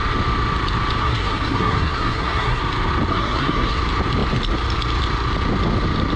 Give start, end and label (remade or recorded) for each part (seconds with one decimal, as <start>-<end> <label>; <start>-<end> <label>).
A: 0.0-1.0 recorded; 1.0-2.6 remade; 2.6-3.1 recorded; 3.1-3.8 remade; 3.8-6.2 recorded